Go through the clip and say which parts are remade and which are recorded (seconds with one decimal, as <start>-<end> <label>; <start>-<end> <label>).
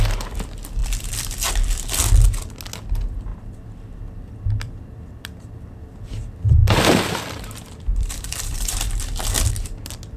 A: 0.0-0.8 recorded; 0.8-1.5 remade; 1.5-3.3 recorded; 3.3-5.7 remade; 5.7-6.6 recorded; 6.6-9.5 remade; 9.5-10.2 recorded